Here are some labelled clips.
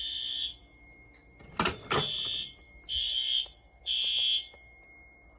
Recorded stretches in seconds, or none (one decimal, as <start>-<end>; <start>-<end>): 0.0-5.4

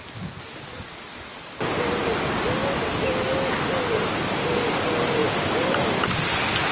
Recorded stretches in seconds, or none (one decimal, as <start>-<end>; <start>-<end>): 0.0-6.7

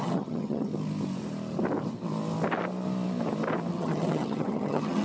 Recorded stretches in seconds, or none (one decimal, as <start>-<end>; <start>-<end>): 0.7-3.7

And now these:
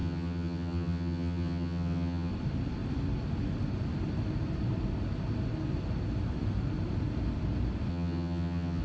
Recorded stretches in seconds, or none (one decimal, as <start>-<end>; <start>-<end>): 2.3-7.9

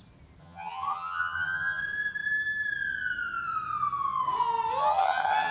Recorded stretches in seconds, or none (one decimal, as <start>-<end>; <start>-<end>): 0.0-0.4; 1.8-4.8